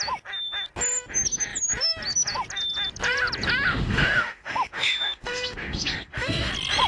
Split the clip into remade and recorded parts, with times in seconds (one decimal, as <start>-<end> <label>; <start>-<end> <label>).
0.0-3.7 recorded; 3.7-6.5 remade; 6.5-6.9 recorded